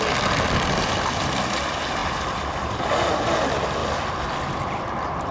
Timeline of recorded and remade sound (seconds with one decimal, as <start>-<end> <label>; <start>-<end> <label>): 0.0-5.3 recorded

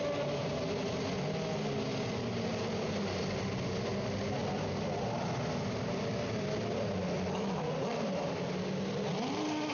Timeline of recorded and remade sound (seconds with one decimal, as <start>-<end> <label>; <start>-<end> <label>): 0.0-9.7 recorded

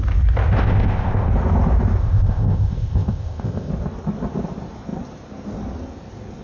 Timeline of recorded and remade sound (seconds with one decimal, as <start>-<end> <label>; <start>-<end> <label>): 0.0-0.6 recorded; 0.6-1.3 remade; 1.3-2.0 recorded; 2.0-3.7 remade; 3.7-6.4 recorded